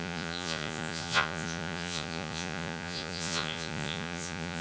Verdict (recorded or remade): remade